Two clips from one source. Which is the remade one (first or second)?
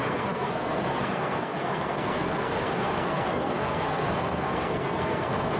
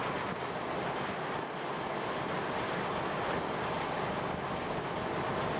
first